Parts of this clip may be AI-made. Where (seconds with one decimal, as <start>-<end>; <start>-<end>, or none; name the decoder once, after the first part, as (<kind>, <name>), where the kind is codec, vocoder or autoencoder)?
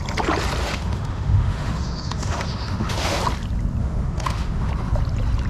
0.6-3.2 (autoencoder, DAC-VAE); 3.8-4.7